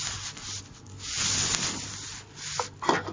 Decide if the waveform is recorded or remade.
recorded